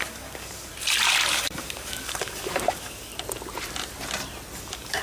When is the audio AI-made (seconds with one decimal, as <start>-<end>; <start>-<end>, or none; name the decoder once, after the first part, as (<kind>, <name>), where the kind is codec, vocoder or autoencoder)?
0.0-0.7 (codec, DAC); 1.3-3.1; 4.6-5.0